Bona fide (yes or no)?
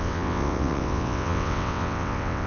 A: no